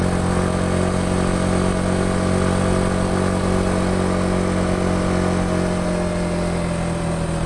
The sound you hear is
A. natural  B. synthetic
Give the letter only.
A